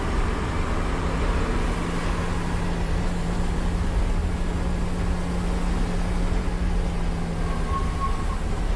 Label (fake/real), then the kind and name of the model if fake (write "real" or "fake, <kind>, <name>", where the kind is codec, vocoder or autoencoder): real